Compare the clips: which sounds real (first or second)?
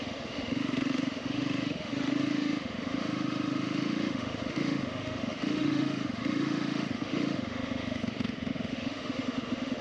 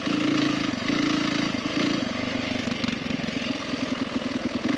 second